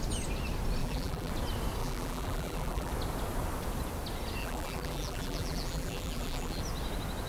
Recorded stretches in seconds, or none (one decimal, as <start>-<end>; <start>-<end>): 0.0-0.8; 1.3-1.8; 2.9-4.4; 6.6-7.3